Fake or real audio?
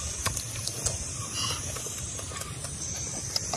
real